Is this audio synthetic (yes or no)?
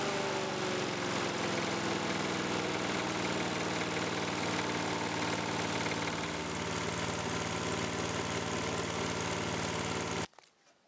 no